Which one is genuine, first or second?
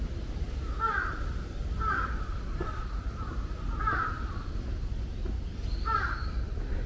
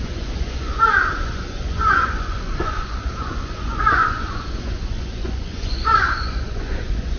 first